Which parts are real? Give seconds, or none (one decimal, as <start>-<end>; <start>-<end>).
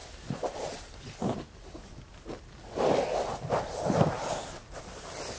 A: 0.0-5.4